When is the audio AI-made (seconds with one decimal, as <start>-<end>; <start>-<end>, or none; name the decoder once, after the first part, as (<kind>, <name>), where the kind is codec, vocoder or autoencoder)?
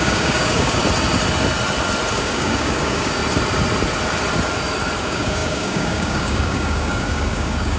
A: 0.0-0.8 (codec, DAC); 2.1-3.2; 5.0-7.8